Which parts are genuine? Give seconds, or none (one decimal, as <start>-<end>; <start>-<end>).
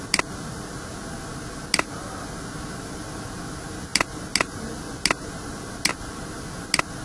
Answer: 0.0-7.0